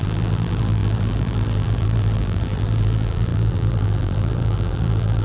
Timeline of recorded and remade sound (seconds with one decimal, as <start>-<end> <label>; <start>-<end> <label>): 0.0-5.2 remade

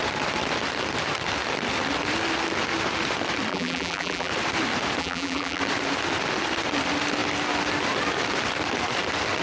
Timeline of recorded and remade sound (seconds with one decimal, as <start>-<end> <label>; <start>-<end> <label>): 0.0-3.5 recorded; 3.5-4.3 remade; 4.3-5.0 recorded; 5.0-5.6 remade; 5.6-9.4 recorded

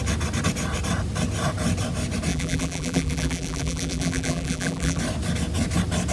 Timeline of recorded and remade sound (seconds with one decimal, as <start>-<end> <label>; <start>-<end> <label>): 0.0-2.3 recorded; 2.3-5.0 remade; 5.0-6.1 recorded

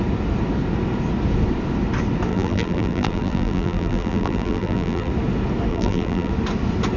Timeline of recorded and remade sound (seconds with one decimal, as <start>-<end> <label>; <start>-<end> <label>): 0.0-2.3 recorded; 2.3-5.1 remade; 5.1-5.7 recorded; 5.7-6.3 remade; 6.3-7.0 recorded

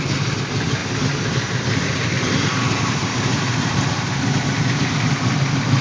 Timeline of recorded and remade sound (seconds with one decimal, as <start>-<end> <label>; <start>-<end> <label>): 0.0-0.8 recorded; 0.8-4.3 remade; 4.3-5.8 recorded

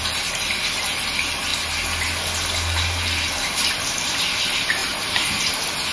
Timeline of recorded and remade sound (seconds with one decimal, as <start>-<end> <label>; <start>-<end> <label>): 0.0-4.8 recorded; 4.8-5.5 remade; 5.5-5.9 recorded